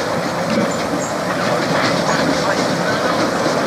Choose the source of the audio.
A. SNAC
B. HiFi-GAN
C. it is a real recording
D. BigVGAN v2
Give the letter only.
C